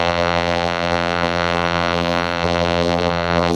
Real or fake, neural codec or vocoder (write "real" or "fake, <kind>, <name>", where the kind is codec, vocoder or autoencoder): fake, vocoder, BigVGAN v2